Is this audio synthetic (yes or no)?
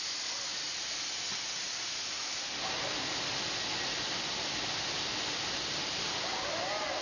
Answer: no